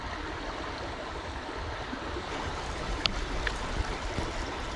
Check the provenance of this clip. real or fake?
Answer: real